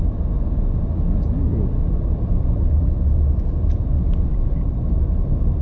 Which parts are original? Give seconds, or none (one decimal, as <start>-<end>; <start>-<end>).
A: 0.0-1.5; 2.9-4.3